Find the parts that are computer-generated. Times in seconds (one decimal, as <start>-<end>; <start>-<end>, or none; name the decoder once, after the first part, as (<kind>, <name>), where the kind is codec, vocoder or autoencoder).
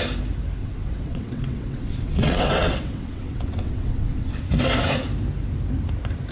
0.6-4.4 (vocoder, WaveNeXt)